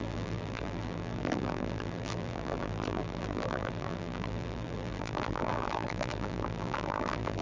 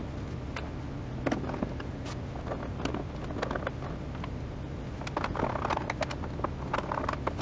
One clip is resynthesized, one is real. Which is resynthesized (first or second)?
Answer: first